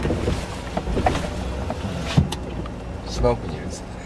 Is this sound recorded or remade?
recorded